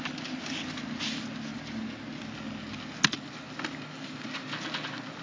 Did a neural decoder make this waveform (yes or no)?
no